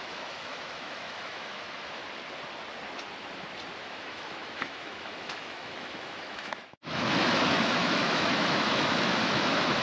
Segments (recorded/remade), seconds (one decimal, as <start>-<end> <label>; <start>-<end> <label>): 0.0-2.0 remade; 2.0-3.8 recorded; 3.8-9.8 remade